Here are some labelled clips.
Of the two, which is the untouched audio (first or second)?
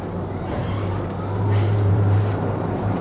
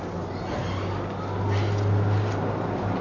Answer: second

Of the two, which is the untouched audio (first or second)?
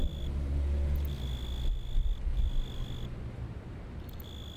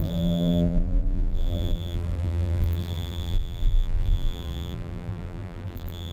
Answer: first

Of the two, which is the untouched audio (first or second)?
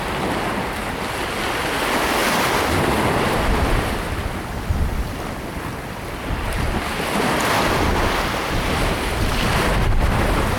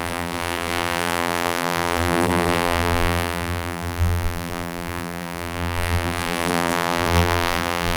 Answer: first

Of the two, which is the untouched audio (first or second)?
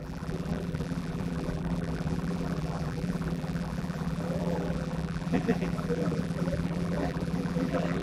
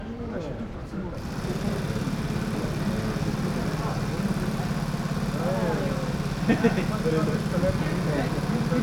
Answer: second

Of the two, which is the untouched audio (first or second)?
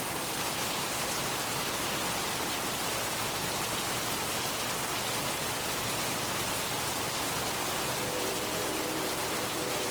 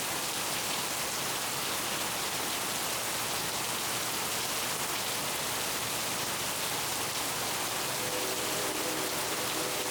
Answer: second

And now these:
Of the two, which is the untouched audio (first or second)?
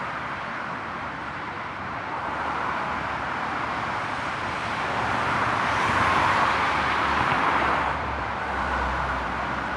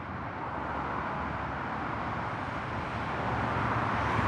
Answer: second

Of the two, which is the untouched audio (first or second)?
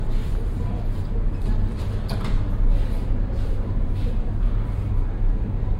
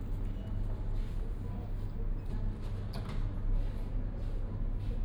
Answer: second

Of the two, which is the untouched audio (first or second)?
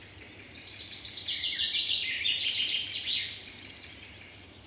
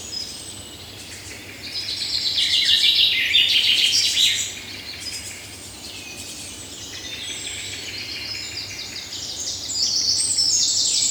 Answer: second